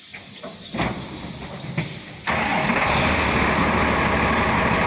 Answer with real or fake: real